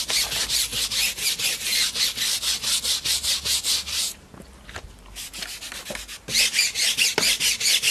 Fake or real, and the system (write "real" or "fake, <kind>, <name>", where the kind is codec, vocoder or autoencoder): real